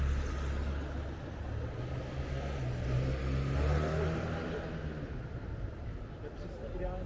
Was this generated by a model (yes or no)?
no